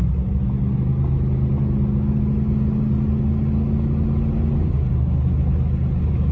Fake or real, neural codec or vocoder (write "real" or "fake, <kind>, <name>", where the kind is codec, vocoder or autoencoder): real